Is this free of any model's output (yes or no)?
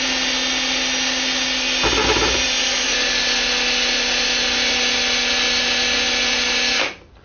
yes